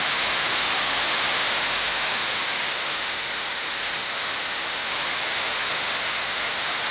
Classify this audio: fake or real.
fake